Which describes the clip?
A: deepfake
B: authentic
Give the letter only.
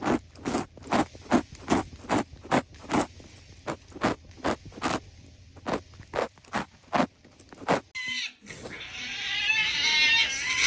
B